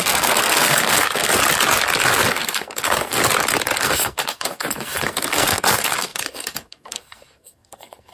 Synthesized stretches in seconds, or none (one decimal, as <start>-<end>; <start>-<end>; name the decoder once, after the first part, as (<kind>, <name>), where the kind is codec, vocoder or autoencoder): 0.0-1.4 (codec, SNAC); 2.1-3.2; 3.8-8.1